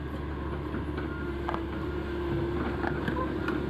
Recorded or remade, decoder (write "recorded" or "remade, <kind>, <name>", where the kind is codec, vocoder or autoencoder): recorded